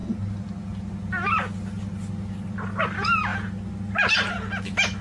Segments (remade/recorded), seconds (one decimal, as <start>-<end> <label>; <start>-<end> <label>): 0.0-5.0 recorded